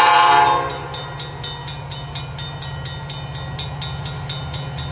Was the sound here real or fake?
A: real